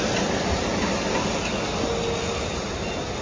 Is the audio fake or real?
real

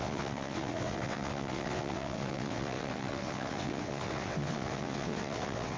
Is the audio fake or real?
fake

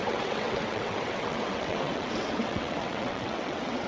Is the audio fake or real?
fake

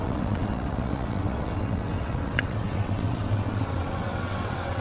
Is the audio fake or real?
fake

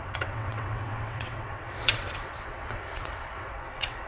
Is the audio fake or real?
fake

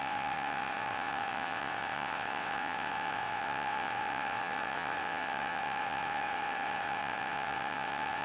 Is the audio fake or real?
fake